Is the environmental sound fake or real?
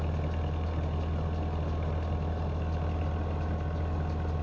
real